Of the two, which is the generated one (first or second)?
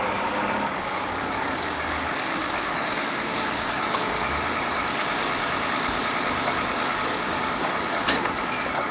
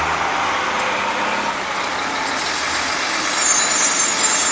first